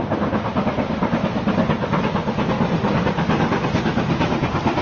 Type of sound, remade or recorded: recorded